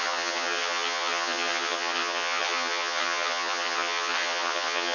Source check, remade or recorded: remade